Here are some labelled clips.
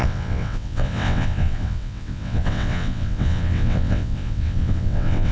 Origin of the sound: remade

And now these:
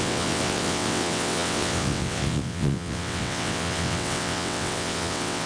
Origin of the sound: remade